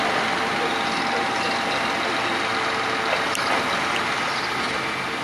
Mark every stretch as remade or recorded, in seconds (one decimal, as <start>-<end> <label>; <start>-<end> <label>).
0.0-5.2 recorded